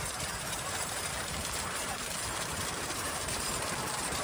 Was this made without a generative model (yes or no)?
no